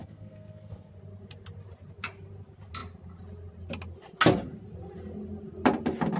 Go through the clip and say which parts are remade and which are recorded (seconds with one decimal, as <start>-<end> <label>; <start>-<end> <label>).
0.0-0.9 remade; 0.9-6.2 recorded